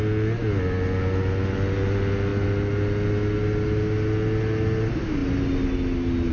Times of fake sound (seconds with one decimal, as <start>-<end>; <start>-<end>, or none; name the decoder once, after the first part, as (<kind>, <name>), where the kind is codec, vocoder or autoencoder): none